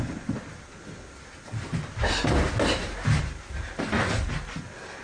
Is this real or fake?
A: real